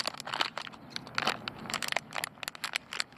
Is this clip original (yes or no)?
yes